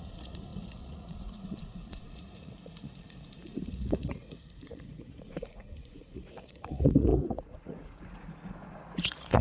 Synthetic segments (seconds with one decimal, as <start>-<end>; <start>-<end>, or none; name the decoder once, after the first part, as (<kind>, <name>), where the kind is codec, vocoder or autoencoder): 0.0-9.4 (vocoder, Vocos)